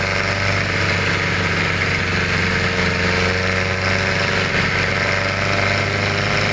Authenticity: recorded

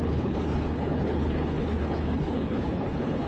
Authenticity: remade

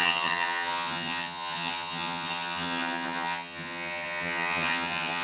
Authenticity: remade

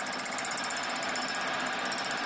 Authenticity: recorded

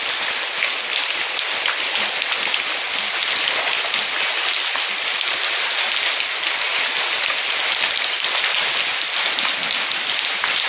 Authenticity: recorded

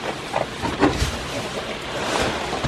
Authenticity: recorded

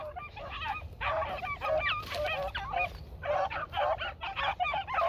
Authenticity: recorded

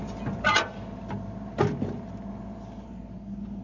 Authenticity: recorded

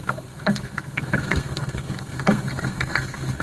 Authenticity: remade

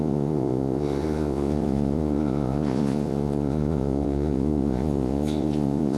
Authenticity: remade